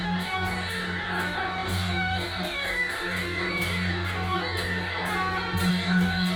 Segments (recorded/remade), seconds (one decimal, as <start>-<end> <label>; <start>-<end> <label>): 0.0-5.1 remade; 5.1-5.7 recorded; 5.7-6.4 remade